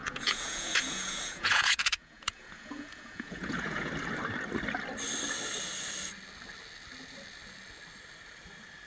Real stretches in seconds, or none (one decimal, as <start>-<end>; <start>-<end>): 3.9-8.9